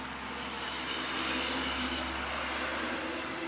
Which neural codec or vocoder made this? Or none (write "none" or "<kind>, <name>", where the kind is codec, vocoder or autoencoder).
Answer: none